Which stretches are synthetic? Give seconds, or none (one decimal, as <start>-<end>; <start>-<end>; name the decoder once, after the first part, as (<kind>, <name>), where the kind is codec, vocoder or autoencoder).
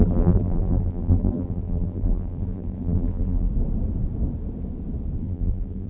0.0-3.5 (vocoder, BigVGAN v2); 5.2-5.9